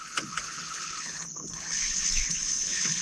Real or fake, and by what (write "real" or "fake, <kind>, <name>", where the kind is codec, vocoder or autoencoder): fake, codec, HILCodec